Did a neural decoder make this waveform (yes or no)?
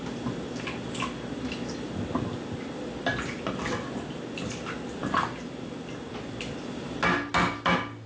no